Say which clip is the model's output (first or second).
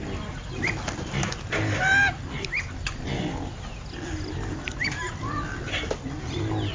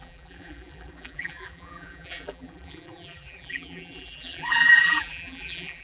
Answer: second